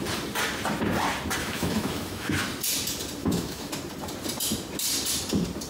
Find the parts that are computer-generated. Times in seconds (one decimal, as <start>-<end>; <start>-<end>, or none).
1.4-2.3; 3.2-3.7